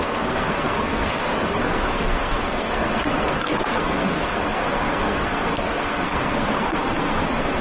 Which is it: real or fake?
fake